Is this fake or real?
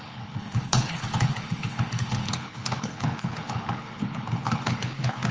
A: fake